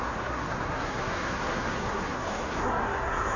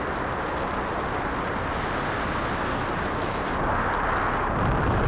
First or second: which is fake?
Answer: first